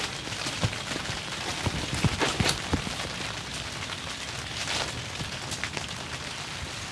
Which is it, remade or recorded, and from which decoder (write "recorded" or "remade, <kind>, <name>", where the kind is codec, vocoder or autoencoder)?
recorded